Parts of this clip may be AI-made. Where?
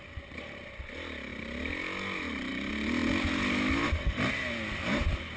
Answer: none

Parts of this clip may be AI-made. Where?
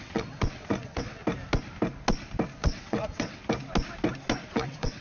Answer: 0.0-1.2 (vocoder, WaveNeXt); 2.6-3.4; 4.5-5.0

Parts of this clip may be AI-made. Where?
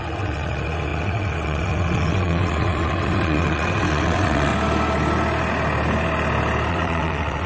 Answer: 0.0-4.5 (vocoder, WaveNeXt); 6.7-7.5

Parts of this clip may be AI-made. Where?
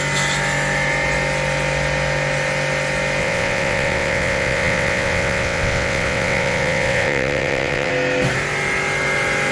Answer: 3.2-7.9 (vocoder, WaveNeXt)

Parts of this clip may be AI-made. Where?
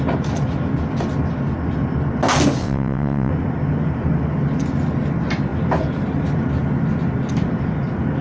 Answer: 2.6-3.3 (vocoder, WaveNeXt)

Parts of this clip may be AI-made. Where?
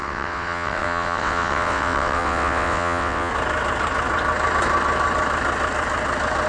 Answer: 0.0-3.3 (vocoder, WaveNeXt)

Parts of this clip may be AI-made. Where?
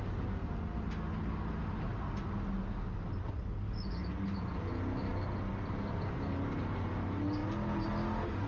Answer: none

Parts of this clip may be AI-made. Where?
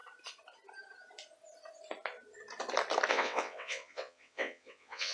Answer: 3.1-5.1 (vocoder, WaveNeXt)